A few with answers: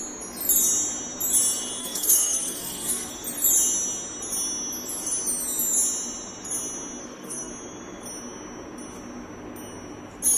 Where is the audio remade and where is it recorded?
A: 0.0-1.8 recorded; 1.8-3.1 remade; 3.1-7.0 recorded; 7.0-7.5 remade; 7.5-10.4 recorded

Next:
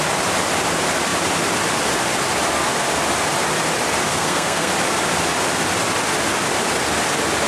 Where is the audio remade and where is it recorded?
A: 0.0-4.1 recorded; 4.1-4.7 remade; 4.7-7.5 recorded

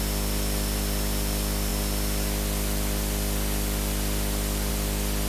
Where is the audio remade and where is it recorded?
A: 0.0-5.3 recorded

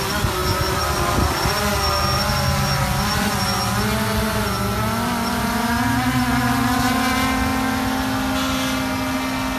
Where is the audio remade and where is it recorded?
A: 0.0-9.6 recorded

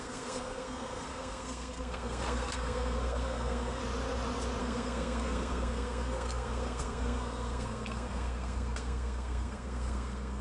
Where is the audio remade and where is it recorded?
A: 0.0-3.8 remade; 3.8-4.6 recorded; 4.6-10.4 remade